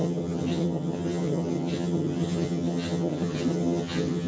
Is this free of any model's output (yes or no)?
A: no